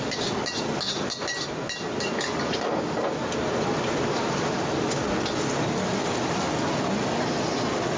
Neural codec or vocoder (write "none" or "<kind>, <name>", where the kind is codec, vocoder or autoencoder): none